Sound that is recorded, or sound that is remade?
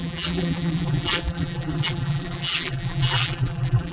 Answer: remade